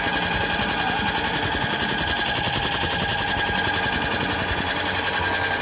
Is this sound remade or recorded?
recorded